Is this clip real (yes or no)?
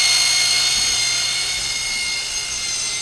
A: yes